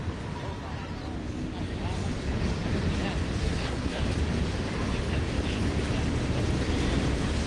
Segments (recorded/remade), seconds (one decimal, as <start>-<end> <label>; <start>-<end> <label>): 0.0-3.4 recorded; 3.4-4.0 remade; 4.0-7.5 recorded